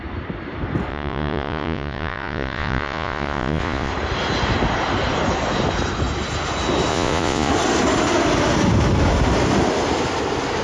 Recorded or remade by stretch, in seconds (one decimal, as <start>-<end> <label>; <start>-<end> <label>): 0.0-0.9 recorded; 0.9-3.9 remade; 3.9-6.9 recorded; 6.9-7.5 remade; 7.5-10.6 recorded